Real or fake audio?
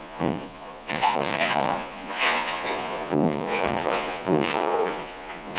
fake